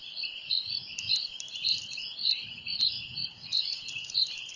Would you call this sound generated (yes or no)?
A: yes